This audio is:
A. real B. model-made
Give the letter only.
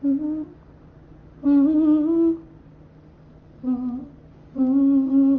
A